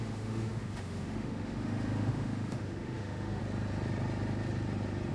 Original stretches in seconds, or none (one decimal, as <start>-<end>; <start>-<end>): 3.4-5.1